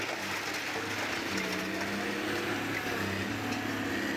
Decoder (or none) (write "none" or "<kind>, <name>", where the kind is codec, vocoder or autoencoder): none